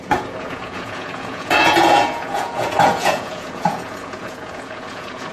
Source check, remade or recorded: remade